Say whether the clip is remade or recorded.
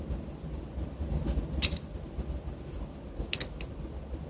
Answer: recorded